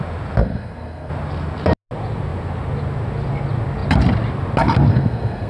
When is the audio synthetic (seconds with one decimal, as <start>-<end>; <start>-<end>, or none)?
0.4-1.1; 4.9-5.5